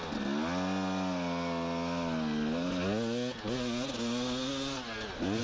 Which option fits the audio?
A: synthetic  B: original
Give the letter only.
B